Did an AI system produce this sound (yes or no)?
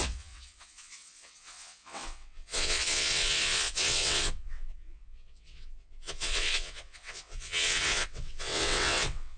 yes